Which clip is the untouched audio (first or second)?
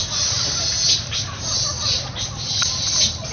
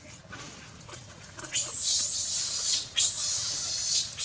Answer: first